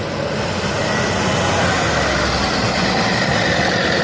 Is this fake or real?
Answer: real